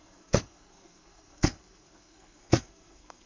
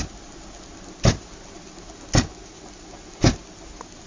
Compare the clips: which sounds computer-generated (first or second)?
first